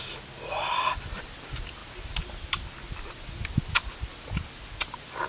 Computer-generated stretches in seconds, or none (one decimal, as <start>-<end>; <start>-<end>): none